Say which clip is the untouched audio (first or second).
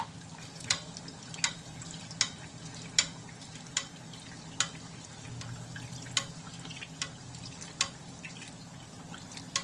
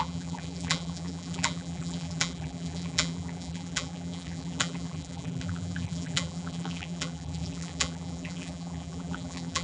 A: first